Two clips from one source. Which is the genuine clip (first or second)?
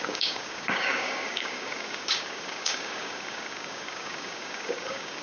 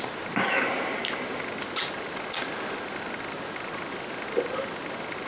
second